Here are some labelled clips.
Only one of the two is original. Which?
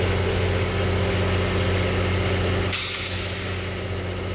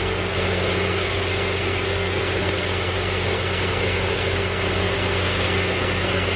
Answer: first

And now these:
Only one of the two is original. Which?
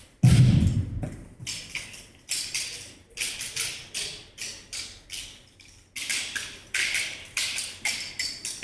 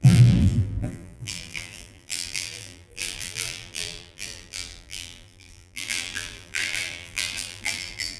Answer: first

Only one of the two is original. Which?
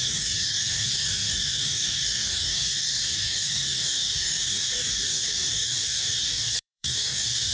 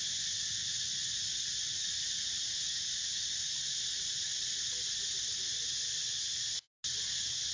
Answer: second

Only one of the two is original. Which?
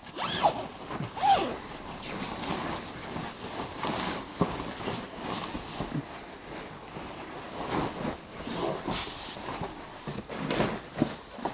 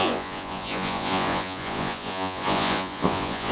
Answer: first